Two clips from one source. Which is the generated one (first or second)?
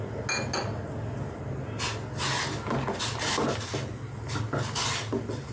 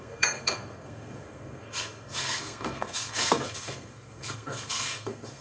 second